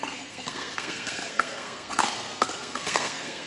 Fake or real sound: fake